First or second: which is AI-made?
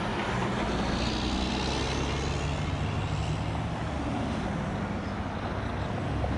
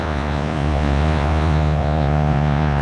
second